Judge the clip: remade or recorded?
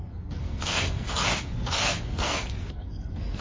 remade